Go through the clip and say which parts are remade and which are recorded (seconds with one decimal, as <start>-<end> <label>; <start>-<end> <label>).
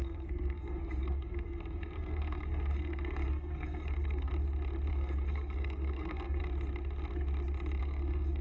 0.0-4.3 remade; 4.3-4.9 recorded; 4.9-6.4 remade; 6.4-7.8 recorded; 7.8-8.4 remade